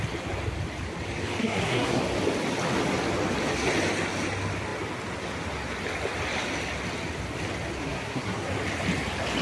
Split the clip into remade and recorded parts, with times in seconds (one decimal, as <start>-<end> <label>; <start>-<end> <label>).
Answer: 0.0-1.4 recorded; 1.4-2.0 remade; 2.0-7.8 recorded; 7.8-8.5 remade; 8.5-9.4 recorded